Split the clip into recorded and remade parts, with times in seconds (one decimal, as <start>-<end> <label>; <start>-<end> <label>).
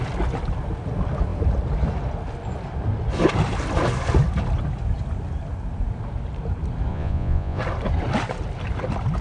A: 0.0-6.9 recorded; 6.9-7.6 remade; 7.6-9.2 recorded